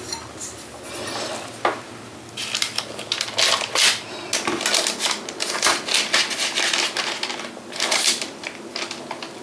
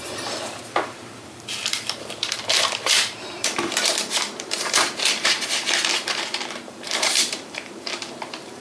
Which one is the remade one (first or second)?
second